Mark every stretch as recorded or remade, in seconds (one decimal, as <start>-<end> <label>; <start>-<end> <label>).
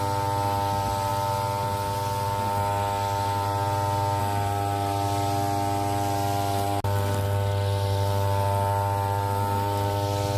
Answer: 0.0-10.4 recorded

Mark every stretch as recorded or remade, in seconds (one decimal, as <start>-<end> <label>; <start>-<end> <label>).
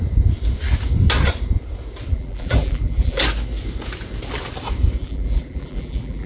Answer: 0.0-2.1 recorded; 2.1-3.2 remade; 3.2-5.0 recorded; 5.0-6.3 remade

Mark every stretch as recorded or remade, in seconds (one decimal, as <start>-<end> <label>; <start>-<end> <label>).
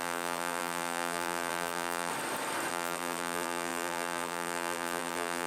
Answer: 0.0-2.1 remade; 2.1-2.7 recorded; 2.7-5.5 remade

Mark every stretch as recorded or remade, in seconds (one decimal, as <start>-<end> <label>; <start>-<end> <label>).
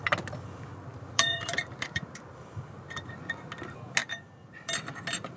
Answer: 0.0-0.9 recorded; 0.9-2.7 remade; 2.7-4.0 recorded; 4.0-4.7 remade; 4.7-5.4 recorded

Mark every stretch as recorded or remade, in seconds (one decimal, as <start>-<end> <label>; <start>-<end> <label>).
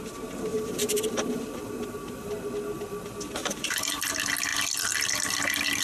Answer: 0.0-0.5 recorded; 0.5-2.3 remade; 2.3-3.4 recorded; 3.4-4.1 remade; 4.1-5.8 recorded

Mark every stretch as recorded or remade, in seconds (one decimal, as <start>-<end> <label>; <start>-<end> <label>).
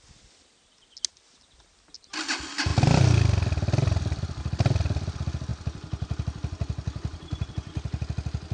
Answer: 0.0-8.5 recorded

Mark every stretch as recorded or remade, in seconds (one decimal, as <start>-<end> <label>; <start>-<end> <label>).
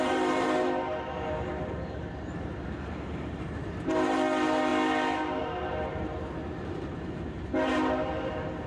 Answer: 0.0-8.7 remade